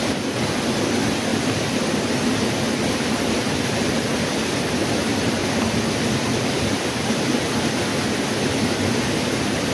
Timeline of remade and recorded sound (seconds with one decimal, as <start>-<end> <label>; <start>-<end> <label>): 0.0-9.7 recorded